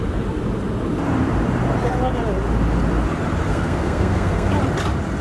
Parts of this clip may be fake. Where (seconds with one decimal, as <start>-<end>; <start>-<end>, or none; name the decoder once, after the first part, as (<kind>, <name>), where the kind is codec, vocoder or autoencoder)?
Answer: 3.5-4.5 (codec, SNAC)